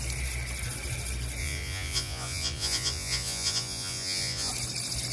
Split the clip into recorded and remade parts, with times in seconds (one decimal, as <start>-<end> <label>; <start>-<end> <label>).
0.0-1.4 recorded; 1.4-4.5 remade; 4.5-5.1 recorded